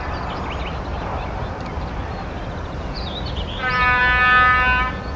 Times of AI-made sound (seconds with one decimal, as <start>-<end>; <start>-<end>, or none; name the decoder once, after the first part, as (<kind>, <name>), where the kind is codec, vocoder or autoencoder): 0.9-4.0 (vocoder, BigVGAN v2)